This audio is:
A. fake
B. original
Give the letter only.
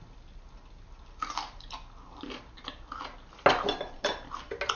B